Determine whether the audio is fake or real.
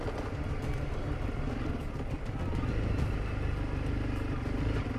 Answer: real